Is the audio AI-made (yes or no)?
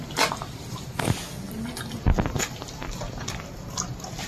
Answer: no